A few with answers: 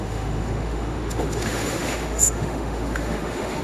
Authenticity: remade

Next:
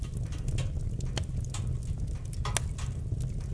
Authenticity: recorded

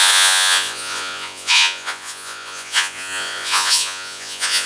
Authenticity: remade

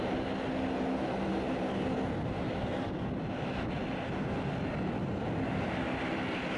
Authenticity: recorded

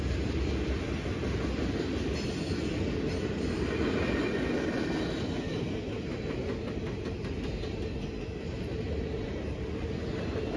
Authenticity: recorded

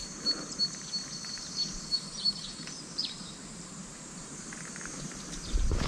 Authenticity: remade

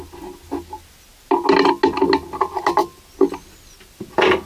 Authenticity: recorded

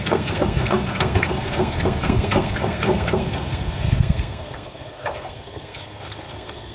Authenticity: remade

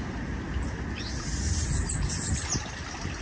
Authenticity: recorded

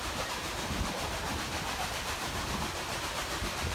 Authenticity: remade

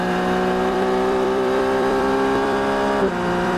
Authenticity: remade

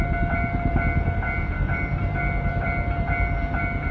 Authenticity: remade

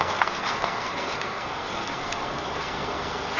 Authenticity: remade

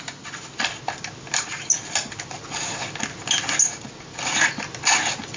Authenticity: recorded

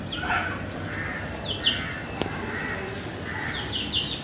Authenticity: recorded